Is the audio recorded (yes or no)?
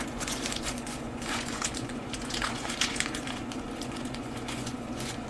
no